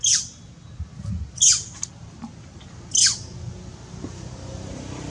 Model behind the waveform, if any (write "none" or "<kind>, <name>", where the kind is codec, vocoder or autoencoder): none